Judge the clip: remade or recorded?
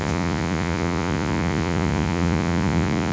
remade